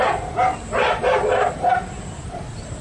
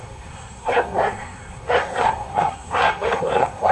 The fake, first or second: second